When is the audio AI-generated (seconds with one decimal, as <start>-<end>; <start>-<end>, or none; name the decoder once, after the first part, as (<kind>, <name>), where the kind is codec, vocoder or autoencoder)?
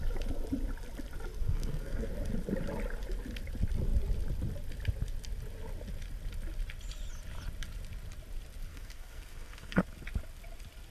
1.4-2.1 (codec, SNAC); 8.7-9.8